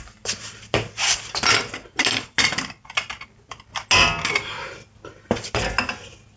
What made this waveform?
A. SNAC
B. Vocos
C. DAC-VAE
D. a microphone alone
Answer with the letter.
D